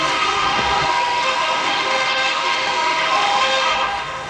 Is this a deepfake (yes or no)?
yes